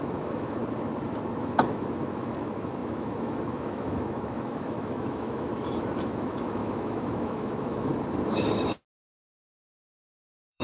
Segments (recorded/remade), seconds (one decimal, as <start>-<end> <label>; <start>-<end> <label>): 0.0-0.6 remade; 0.6-1.4 recorded; 1.4-5.5 remade; 5.5-6.0 recorded; 6.0-7.9 remade; 7.9-9.2 recorded; 9.2-10.6 remade